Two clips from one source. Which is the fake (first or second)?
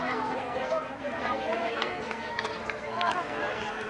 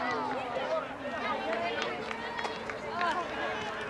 first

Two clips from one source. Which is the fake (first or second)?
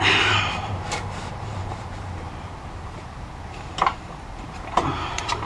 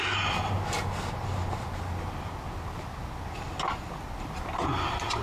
first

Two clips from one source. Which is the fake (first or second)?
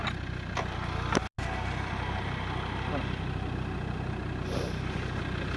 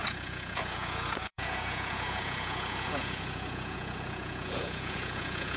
second